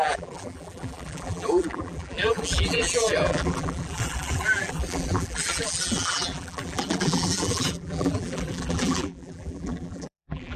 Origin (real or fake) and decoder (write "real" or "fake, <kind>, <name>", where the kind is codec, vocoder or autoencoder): fake, vocoder, BigVGAN v2